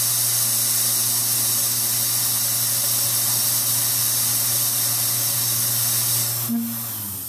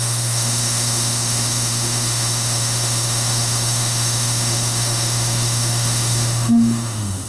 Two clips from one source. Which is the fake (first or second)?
second